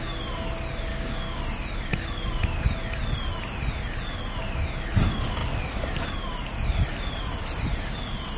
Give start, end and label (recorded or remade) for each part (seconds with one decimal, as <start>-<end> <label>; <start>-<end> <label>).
0.0-0.9 recorded; 0.9-1.4 remade; 1.4-8.4 recorded